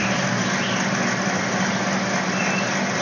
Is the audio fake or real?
real